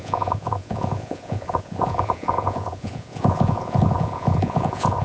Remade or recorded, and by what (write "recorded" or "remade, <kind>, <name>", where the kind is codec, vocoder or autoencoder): remade, vocoder, Vocos